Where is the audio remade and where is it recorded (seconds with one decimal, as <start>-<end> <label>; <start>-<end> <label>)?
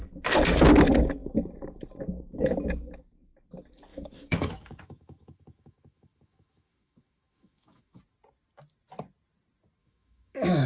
0.0-3.9 recorded; 3.9-8.0 remade; 8.0-9.8 recorded; 9.8-10.7 remade